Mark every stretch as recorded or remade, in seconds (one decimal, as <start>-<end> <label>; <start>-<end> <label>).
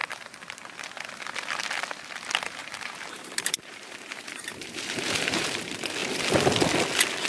0.0-0.7 remade; 0.7-2.6 recorded; 2.6-5.6 remade; 5.6-7.3 recorded